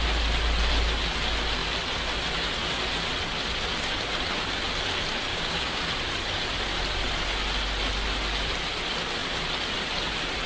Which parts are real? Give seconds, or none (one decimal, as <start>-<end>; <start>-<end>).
0.0-5.3; 5.8-10.5